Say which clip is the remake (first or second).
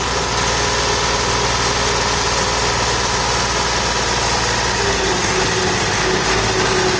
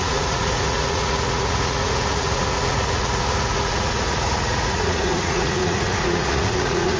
second